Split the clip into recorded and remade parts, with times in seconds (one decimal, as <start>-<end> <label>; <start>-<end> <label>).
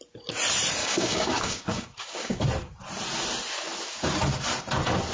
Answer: 0.0-0.8 recorded; 0.8-2.4 remade; 2.4-5.1 recorded